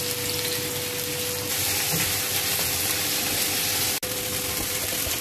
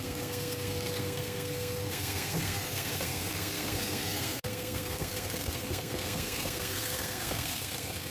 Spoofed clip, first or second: second